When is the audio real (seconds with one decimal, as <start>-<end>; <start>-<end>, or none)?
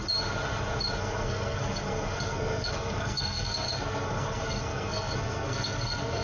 0.0-1.0